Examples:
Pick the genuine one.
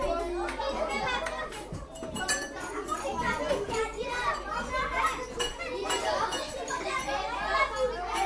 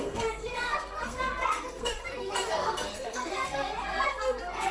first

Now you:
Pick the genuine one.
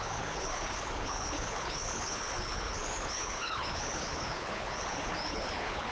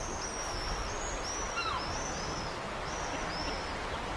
second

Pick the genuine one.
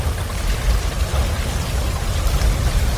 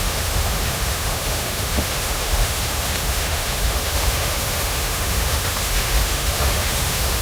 first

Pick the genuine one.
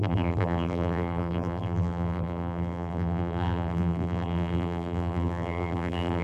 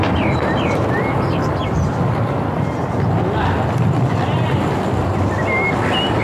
second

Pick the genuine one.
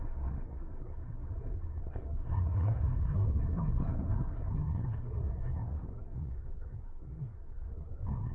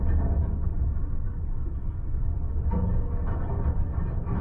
second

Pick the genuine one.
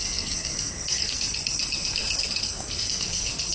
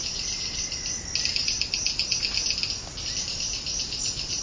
second